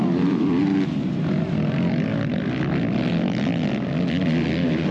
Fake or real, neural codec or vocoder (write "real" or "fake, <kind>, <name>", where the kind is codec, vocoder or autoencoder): real